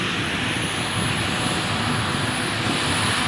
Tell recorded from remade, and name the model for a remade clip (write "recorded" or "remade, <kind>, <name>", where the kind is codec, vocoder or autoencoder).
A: recorded